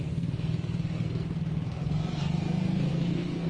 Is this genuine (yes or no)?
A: no